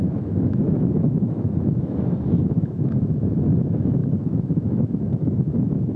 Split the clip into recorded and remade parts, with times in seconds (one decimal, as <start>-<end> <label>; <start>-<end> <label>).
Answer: 0.0-6.0 remade